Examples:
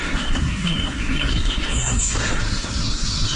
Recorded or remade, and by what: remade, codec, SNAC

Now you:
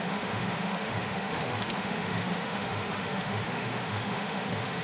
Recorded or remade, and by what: remade, autoencoder, DAC-VAE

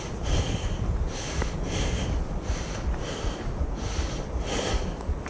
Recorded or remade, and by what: recorded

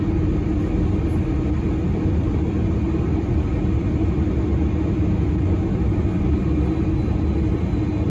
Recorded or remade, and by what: recorded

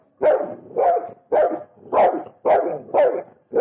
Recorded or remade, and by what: recorded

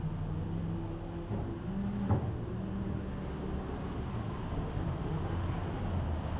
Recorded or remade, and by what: recorded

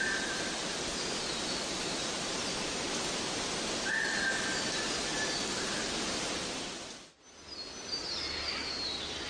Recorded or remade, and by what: recorded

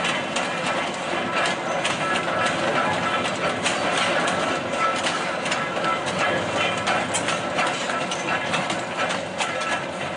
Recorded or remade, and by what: recorded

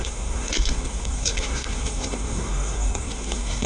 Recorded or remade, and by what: remade, codec, SNAC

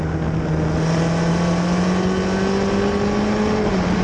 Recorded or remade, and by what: recorded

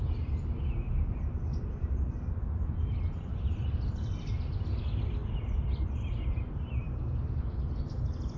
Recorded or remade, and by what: recorded